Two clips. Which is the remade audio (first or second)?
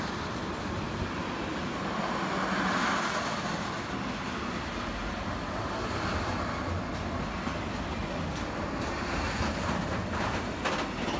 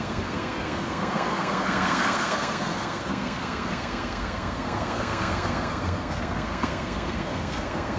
second